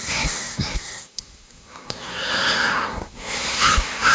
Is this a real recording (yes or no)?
no